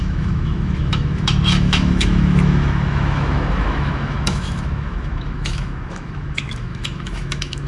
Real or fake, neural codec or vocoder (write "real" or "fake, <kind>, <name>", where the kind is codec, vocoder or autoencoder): fake, autoencoder, DAC-VAE